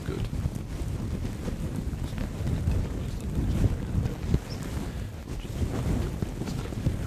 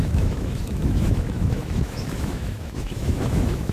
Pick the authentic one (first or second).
first